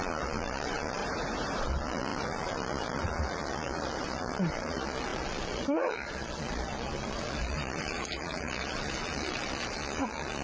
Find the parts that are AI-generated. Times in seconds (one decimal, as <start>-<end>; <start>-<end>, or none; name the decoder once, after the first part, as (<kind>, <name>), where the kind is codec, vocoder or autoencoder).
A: 0.0-1.0 (vocoder, Vocos); 1.6-10.4

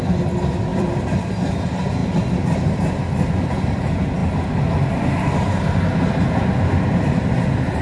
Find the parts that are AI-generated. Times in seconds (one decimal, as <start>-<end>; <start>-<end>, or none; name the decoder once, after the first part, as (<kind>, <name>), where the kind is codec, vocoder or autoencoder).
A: 0.7-1.3 (vocoder, BigVGAN v2); 2.0-3.5

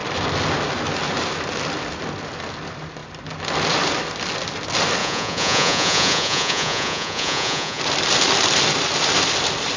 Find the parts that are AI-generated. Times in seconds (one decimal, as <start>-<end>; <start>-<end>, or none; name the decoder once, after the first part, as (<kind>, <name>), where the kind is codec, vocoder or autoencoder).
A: 5.0-7.8 (vocoder, Vocos)

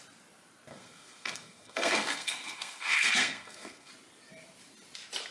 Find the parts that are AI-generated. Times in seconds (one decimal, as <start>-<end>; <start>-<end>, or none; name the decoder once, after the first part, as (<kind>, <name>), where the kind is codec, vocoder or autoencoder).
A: 0.7-3.9 (codec, SNAC)

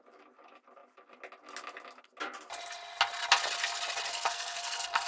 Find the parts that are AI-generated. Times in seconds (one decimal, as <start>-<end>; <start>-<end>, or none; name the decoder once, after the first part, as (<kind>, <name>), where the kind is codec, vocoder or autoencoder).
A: 4.1-5.1 (codec, SNAC)

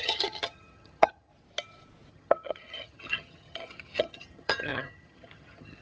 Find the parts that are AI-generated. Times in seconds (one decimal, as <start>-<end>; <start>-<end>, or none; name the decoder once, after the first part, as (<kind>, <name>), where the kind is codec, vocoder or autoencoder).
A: 0.0-1.3 (vocoder, HiFi-GAN); 2.1-5.8

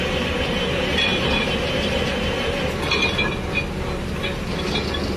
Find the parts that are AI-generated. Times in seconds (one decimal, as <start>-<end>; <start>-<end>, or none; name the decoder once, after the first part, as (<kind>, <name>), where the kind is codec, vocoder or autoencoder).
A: none

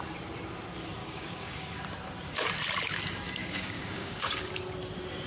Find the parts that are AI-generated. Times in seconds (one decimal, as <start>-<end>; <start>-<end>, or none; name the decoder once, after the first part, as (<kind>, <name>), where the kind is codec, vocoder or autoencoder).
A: 1.0-1.8 (codec, DAC); 3.4-4.5